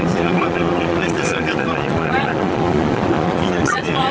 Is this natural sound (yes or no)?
no